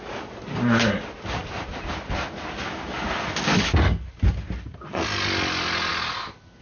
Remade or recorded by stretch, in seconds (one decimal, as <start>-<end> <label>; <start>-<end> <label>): 0.0-6.6 recorded